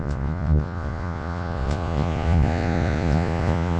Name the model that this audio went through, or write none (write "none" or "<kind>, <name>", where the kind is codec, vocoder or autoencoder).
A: vocoder, Vocos